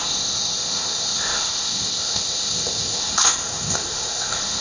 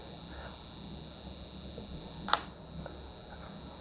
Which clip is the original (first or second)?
second